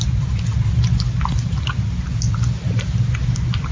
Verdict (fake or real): real